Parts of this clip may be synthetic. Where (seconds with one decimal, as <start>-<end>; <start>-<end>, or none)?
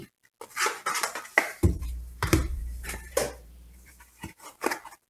1.5-4.6